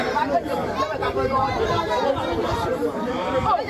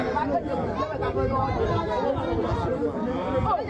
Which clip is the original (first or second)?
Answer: second